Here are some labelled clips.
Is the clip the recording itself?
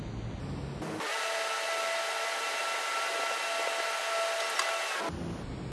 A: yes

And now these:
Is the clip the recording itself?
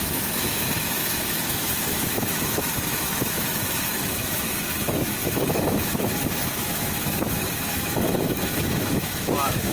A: no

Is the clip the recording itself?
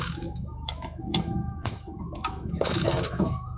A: no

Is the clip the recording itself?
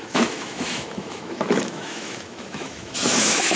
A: no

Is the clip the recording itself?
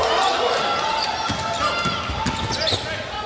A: yes